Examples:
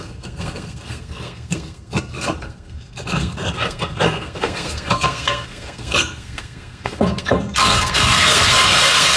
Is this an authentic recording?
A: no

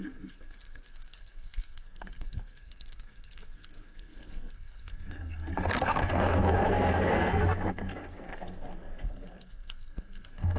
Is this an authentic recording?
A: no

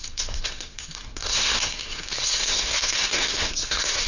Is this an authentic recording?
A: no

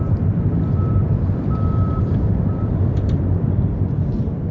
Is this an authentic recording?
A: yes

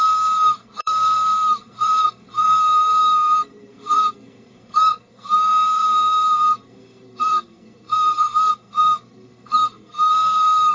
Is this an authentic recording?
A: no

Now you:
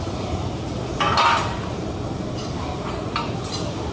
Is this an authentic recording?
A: yes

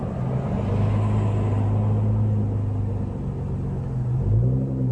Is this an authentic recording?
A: yes